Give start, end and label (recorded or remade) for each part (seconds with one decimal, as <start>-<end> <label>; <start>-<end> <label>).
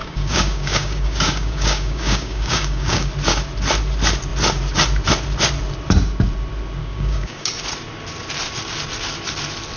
0.0-3.1 remade; 3.1-6.8 recorded; 6.8-7.5 remade; 7.5-9.8 recorded